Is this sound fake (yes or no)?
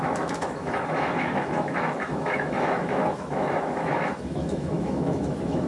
yes